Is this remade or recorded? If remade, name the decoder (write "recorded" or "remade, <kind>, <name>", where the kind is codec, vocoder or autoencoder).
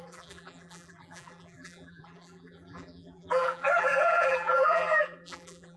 remade, vocoder, BigVGAN v2